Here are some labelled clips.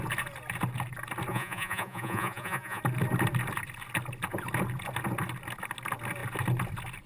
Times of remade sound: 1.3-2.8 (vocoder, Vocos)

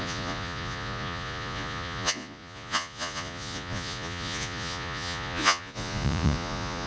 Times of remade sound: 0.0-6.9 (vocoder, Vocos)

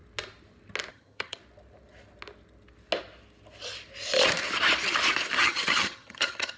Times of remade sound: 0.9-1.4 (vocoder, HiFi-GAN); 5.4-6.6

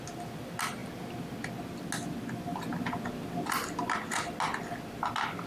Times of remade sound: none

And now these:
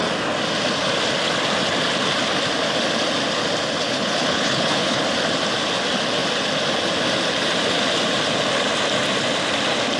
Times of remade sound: 3.8-5.0 (codec, HILCodec)

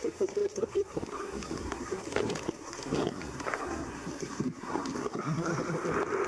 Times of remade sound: 0.0-5.5 (codec, SNAC)